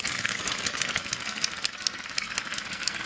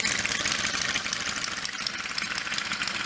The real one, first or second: second